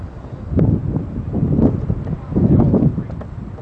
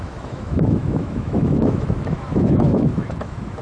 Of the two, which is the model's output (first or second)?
second